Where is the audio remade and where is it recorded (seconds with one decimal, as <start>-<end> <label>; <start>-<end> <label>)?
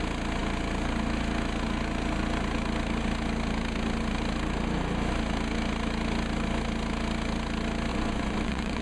0.0-7.9 recorded; 7.9-8.8 remade